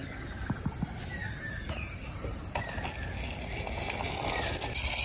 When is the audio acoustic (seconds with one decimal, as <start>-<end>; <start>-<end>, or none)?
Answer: 0.0-1.2; 1.8-5.0